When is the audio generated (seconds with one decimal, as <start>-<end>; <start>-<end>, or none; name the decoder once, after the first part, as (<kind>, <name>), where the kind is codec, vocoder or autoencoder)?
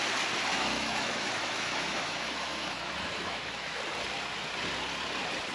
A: 0.5-3.8 (autoencoder, DAC-VAE)